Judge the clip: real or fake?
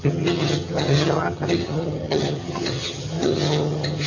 fake